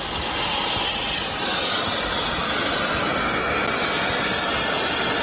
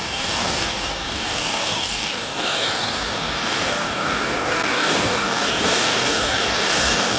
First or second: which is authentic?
first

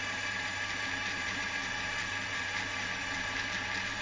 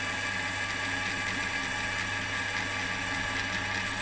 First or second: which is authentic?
second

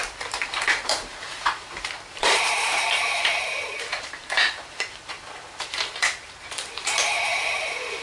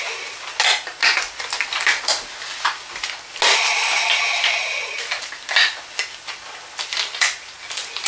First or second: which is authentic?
second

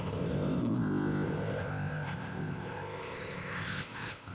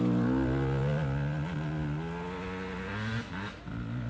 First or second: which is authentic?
second